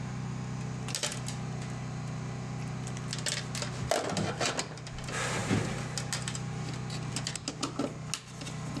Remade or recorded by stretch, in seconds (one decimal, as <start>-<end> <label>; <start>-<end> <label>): 0.0-8.8 recorded